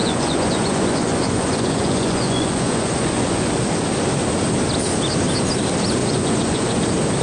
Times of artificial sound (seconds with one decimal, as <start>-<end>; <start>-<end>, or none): 0.0-3.5; 6.0-6.8